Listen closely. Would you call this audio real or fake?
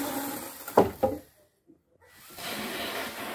real